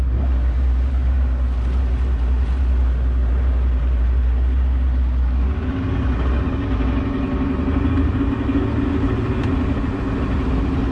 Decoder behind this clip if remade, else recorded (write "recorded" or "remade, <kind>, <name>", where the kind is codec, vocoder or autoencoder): recorded